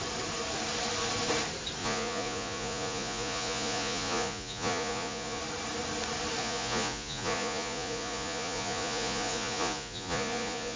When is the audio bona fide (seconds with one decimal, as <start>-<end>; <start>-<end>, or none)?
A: 0.0-1.8; 5.4-6.4